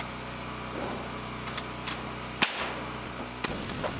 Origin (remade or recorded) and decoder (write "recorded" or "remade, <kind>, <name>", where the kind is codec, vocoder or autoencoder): recorded